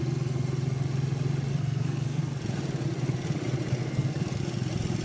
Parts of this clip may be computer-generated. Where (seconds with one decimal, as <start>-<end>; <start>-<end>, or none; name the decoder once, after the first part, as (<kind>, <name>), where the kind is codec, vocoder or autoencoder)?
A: 1.5-2.2 (codec, SNAC); 3.8-4.4